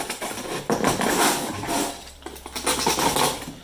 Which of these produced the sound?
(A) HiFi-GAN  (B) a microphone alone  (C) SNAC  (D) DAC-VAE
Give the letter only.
B